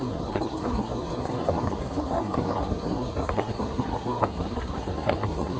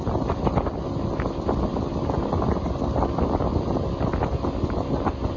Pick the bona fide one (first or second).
second